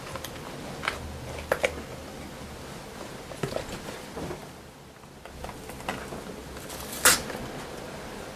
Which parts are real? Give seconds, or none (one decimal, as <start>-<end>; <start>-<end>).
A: 0.0-8.4